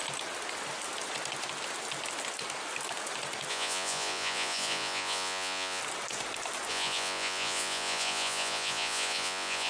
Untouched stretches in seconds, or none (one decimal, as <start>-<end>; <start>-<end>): 0.0-3.5; 5.8-6.7